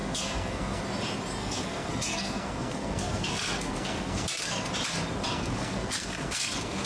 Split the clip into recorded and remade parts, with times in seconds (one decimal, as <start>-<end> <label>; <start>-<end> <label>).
0.0-0.8 remade; 0.8-1.4 recorded; 1.4-4.7 remade; 4.7-5.3 recorded; 5.3-6.9 remade